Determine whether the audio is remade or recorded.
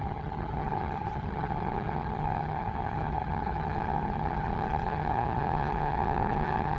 remade